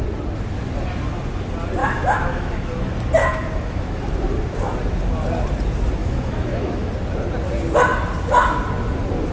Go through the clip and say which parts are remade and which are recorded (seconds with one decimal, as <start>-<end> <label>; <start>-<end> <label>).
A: 0.0-1.8 recorded; 1.8-2.7 remade; 2.7-3.2 recorded; 3.2-4.0 remade; 4.0-6.0 recorded; 6.0-6.9 remade; 6.9-9.3 recorded